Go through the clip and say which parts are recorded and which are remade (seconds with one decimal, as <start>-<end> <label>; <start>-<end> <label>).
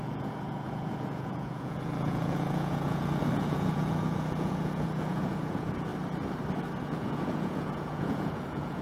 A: 0.0-5.9 remade; 5.9-6.8 recorded; 6.8-8.8 remade